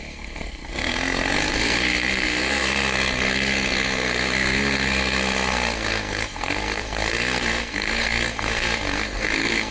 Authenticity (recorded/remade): remade